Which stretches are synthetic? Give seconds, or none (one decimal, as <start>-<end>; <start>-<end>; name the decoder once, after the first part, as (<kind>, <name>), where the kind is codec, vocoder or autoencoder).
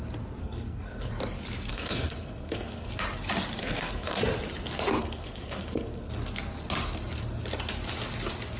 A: 0.4-1.1 (codec, SNAC); 1.7-2.9; 3.6-4.2; 5.0-6.1